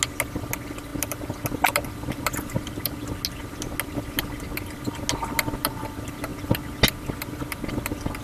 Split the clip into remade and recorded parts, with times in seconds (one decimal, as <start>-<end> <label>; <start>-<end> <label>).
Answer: 0.0-8.2 recorded